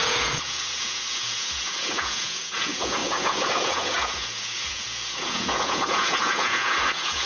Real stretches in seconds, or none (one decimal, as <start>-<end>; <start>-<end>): none